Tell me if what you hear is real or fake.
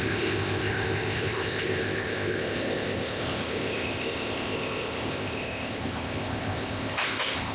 fake